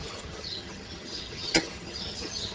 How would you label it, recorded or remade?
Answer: remade